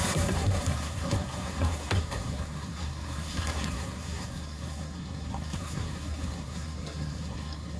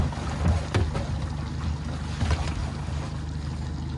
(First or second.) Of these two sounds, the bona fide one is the second